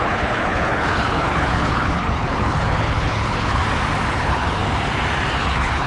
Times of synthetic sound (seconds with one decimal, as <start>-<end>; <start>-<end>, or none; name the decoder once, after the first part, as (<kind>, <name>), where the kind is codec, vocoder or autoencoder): 0.0-3.6 (codec, HILCodec); 4.1-4.6; 5.4-5.9